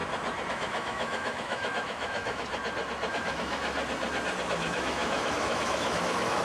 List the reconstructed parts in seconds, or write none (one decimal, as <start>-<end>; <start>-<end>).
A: 0.5-2.5; 3.1-3.8; 4.5-6.4